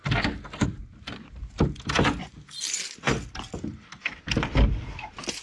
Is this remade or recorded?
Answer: recorded